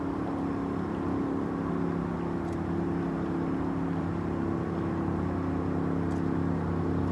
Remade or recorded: recorded